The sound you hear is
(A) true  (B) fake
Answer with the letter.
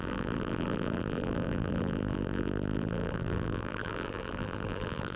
B